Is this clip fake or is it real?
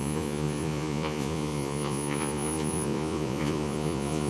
fake